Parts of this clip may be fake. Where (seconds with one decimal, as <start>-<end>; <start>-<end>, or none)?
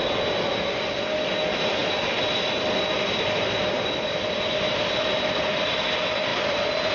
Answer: 1.8-5.8; 6.3-6.9